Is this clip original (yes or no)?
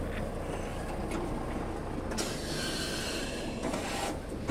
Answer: yes